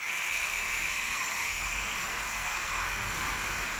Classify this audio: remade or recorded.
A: remade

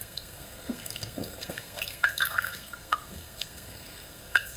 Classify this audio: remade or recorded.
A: remade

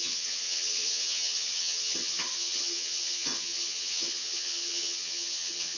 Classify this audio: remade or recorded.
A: remade